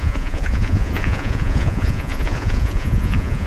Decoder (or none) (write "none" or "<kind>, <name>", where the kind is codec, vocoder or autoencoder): vocoder, Vocos